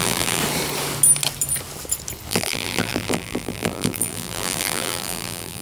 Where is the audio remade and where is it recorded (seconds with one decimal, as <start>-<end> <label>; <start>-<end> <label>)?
0.0-0.4 remade; 0.4-2.3 recorded; 2.3-5.6 remade